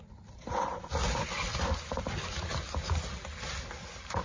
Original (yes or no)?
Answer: yes